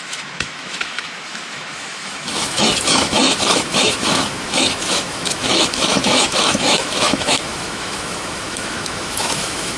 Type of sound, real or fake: fake